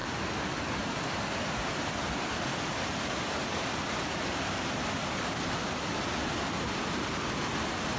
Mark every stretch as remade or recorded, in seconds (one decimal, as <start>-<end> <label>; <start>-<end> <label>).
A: 0.0-2.5 recorded; 2.5-5.4 remade; 5.4-6.2 recorded; 6.2-7.1 remade; 7.1-8.0 recorded